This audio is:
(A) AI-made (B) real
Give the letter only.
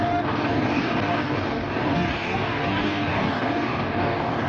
A